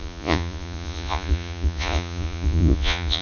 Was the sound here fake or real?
fake